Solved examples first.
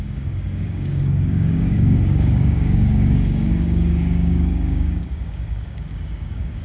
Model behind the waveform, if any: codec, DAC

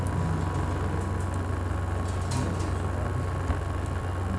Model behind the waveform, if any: none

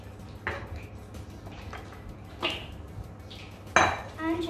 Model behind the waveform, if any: none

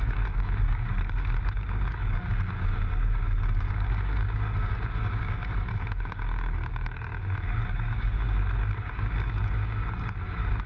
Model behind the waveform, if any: codec, DAC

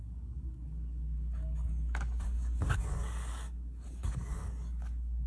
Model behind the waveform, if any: codec, DAC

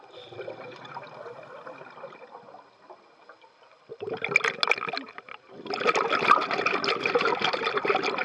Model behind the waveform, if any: none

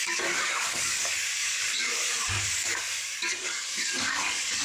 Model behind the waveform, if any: codec, DAC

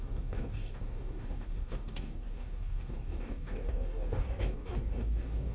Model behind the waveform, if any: codec, DAC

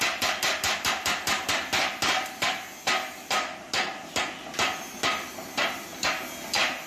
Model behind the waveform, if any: none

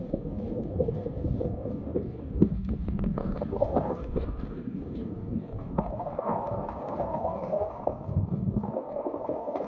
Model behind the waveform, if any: codec, DAC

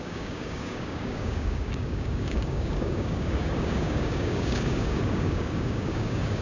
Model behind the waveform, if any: codec, DAC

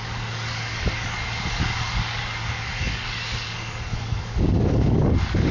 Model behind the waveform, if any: codec, DAC